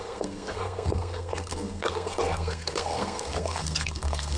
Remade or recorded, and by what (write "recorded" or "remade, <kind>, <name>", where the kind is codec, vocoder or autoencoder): remade, codec, SNAC